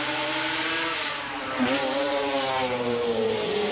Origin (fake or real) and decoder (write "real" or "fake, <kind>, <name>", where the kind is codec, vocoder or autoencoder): fake, vocoder, BigVGAN v2